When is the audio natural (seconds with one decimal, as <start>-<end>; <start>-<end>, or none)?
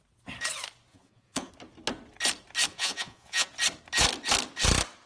0.0-0.9; 1.5-2.7; 3.5-5.1